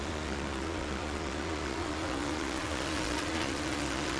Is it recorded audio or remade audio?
remade